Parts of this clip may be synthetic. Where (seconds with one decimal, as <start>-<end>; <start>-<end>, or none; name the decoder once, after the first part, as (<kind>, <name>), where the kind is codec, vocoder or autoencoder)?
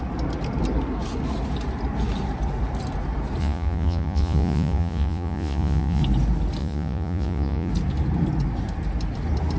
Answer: 3.4-6.0 (vocoder, Vocos); 6.6-7.7